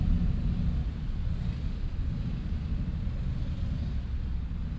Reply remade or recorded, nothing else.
recorded